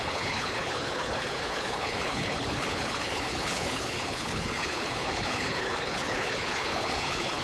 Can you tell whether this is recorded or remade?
remade